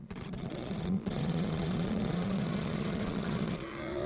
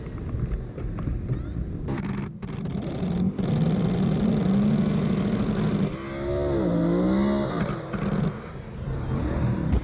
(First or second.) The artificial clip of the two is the first